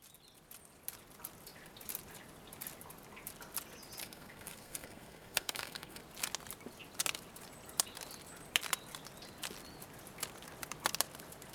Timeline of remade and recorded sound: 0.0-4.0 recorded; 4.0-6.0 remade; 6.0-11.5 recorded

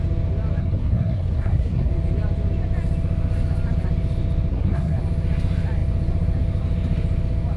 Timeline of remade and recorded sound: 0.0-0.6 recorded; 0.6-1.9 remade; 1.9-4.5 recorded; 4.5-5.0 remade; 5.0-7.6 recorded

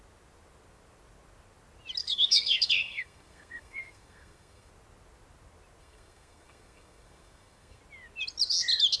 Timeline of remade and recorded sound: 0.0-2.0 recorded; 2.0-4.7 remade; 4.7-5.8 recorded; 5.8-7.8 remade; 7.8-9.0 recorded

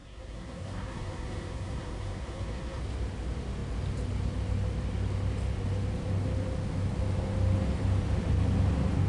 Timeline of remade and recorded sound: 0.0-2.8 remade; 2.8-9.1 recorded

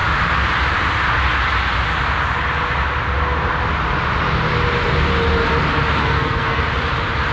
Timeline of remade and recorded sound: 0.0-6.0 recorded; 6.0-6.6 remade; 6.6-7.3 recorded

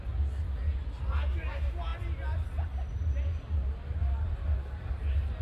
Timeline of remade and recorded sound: 0.0-5.4 recorded

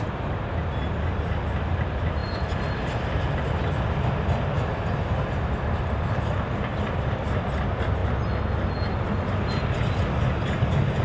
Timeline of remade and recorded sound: 0.0-11.0 recorded